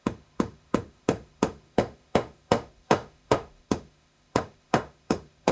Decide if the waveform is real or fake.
fake